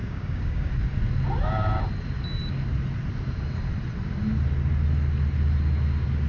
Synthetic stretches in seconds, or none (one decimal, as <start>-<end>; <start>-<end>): 0.0-0.7